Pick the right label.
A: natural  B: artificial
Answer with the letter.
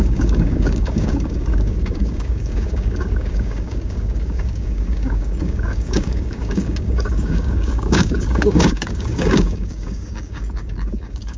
B